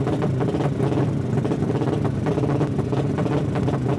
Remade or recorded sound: recorded